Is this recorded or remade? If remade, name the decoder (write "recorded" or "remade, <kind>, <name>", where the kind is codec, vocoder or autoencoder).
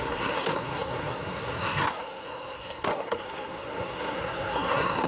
remade, codec, SNAC